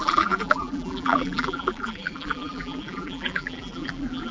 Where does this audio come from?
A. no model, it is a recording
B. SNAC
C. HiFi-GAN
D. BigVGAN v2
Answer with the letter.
D